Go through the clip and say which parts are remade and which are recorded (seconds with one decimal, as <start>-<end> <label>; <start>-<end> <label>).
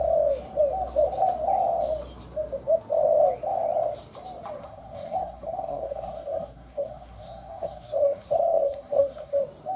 0.0-4.6 recorded; 4.6-9.4 remade; 9.4-9.8 recorded